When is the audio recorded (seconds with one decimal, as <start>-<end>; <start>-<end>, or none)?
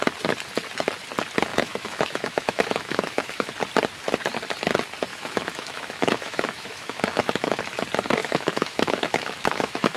0.0-1.5; 3.5-5.1; 7.6-8.2